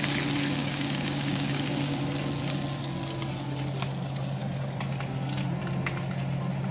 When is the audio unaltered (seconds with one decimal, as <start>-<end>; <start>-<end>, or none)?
0.0-0.6; 2.0-6.7